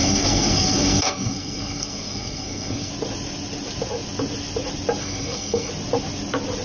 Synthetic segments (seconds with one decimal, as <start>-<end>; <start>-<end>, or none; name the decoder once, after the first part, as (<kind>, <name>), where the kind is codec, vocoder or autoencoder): 0.0-2.9 (codec, SNAC); 5.0-5.7